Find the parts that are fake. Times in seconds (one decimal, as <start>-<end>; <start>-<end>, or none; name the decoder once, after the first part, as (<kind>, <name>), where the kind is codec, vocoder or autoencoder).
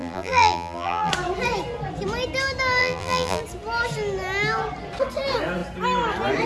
0.0-1.1 (vocoder, BigVGAN v2); 2.8-3.4